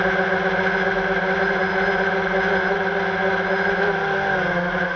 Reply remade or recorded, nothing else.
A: recorded